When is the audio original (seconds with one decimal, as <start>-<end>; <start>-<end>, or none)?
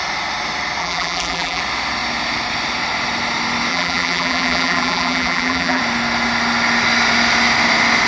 0.0-0.8; 1.6-3.7; 5.8-8.1